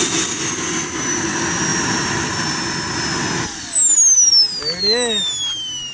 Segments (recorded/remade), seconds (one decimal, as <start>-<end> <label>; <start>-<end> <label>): 0.0-5.9 recorded